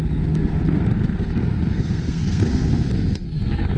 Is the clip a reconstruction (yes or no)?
yes